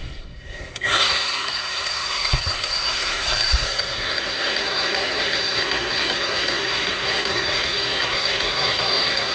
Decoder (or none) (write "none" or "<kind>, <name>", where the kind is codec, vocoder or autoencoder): codec, SNAC